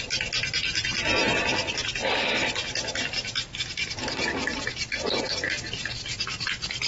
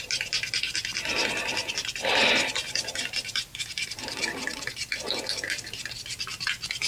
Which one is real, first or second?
first